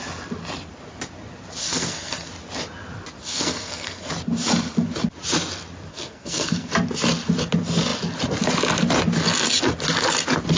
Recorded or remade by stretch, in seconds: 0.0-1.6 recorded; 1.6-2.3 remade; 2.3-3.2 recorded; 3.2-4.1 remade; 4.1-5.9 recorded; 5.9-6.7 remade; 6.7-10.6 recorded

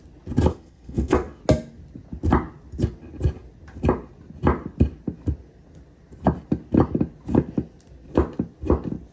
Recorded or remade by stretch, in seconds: 0.0-0.5 recorded; 0.5-1.4 remade; 1.4-9.1 recorded

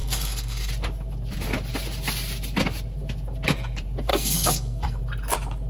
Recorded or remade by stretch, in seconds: 0.0-0.7 remade; 0.7-4.1 recorded; 4.1-5.0 remade; 5.0-5.7 recorded